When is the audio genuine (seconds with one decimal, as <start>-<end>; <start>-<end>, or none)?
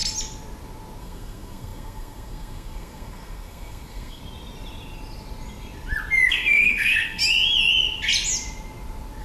0.0-1.0; 4.2-6.3; 7.2-9.2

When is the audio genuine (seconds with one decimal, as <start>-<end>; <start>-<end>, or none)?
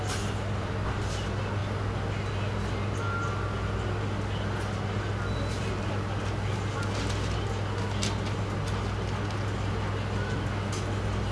0.0-11.3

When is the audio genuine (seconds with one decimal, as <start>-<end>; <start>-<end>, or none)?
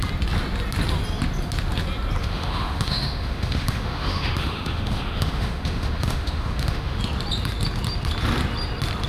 0.0-2.2; 7.0-9.1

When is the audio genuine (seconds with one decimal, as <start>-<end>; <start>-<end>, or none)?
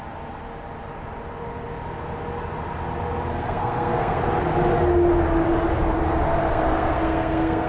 0.0-3.3; 4.2-6.5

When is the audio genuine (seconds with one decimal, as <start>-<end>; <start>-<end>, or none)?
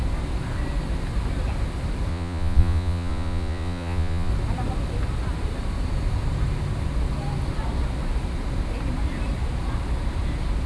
0.0-2.1; 4.3-10.7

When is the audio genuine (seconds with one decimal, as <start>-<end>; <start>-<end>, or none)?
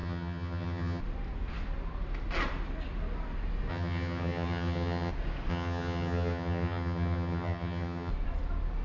1.0-3.7; 5.1-5.5; 8.1-8.8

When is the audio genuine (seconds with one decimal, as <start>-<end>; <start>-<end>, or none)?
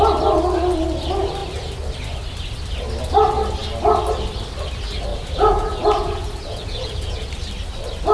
0.0-5.1; 7.3-8.1